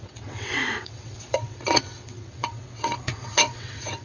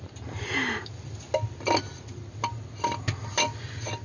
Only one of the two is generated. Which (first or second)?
first